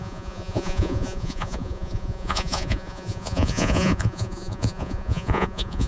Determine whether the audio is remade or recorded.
remade